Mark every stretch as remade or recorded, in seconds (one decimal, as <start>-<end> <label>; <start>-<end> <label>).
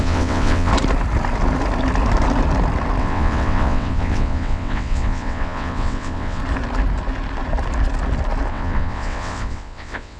0.0-0.7 remade; 0.7-3.0 recorded; 3.0-6.4 remade; 6.4-8.5 recorded; 8.5-10.2 remade